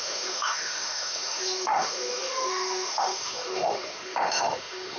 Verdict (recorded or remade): remade